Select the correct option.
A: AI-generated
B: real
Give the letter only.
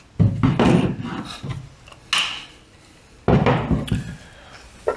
B